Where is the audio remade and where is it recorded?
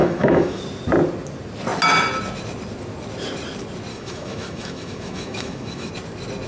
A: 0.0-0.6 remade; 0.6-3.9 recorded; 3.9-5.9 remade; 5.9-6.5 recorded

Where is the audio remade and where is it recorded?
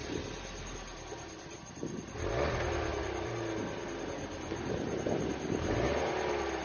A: 0.0-6.6 recorded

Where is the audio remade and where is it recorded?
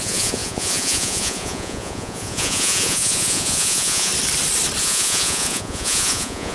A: 0.0-4.1 remade; 4.1-4.8 recorded; 4.8-6.5 remade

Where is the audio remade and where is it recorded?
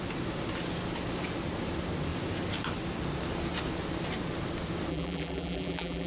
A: 0.0-4.9 recorded; 4.9-6.1 remade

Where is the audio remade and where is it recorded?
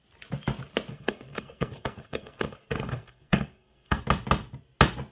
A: 0.0-0.9 recorded; 0.9-4.0 remade; 4.0-5.1 recorded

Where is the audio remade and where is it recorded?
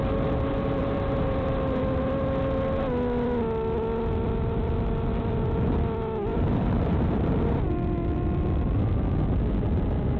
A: 0.0-0.8 recorded; 0.8-1.8 remade; 1.8-6.3 recorded; 6.3-7.6 remade; 7.6-10.2 recorded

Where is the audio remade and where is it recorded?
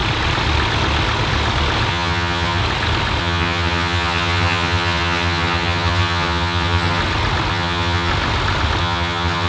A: 0.0-1.9 recorded; 1.9-2.6 remade; 2.6-3.2 recorded; 3.2-7.0 remade; 7.0-7.5 recorded; 7.5-8.1 remade; 8.1-8.8 recorded; 8.8-9.5 remade